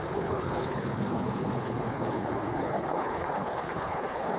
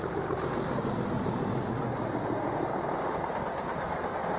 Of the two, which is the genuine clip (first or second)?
second